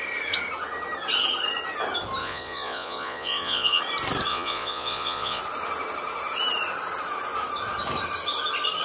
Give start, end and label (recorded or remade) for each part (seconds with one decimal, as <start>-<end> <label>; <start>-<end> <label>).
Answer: 0.0-2.2 recorded; 2.2-3.8 remade; 3.8-4.3 recorded; 4.3-5.4 remade; 5.4-8.8 recorded